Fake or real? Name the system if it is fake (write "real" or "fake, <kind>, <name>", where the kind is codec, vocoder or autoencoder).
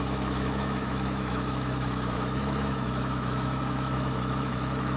fake, autoencoder, DAC-VAE